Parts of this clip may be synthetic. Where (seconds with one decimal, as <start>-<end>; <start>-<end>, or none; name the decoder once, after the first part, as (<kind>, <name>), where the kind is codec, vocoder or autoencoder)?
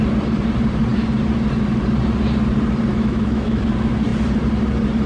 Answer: 2.9-3.6 (autoencoder, DAC-VAE)